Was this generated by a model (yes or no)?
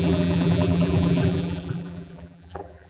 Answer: yes